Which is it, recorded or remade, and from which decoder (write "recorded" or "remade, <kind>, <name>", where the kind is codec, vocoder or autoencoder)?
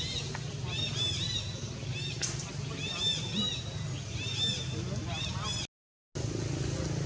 recorded